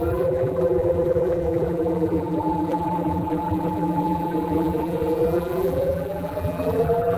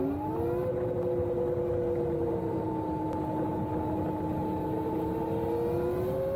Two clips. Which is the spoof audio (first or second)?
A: first